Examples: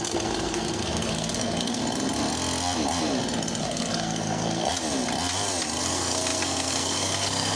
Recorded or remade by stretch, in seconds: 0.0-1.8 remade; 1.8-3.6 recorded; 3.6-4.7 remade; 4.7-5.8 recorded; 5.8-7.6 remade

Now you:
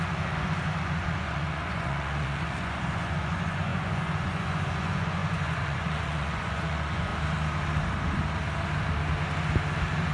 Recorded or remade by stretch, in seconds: 0.0-7.1 remade; 7.1-10.1 recorded